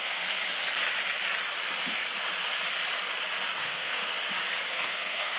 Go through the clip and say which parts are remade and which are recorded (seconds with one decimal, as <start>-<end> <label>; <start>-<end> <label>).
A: 0.0-0.4 remade; 0.4-3.6 recorded; 3.6-4.0 remade; 4.0-4.7 recorded; 4.7-5.4 remade